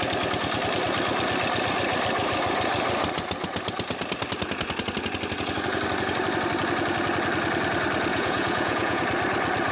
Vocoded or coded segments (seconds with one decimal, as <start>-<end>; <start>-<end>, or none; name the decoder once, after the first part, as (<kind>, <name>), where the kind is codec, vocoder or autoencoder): 8.1-9.0 (vocoder, Vocos)

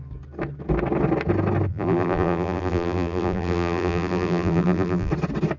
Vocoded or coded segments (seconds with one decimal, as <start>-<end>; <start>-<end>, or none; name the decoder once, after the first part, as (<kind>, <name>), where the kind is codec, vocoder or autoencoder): 1.7-5.1 (vocoder, BigVGAN v2)

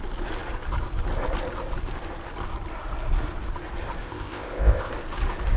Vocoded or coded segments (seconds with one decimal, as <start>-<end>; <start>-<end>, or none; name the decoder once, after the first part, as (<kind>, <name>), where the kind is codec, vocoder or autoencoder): 4.0-4.9 (codec, ZipCodec)